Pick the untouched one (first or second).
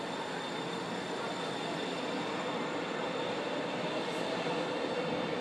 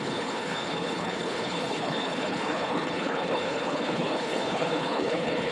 first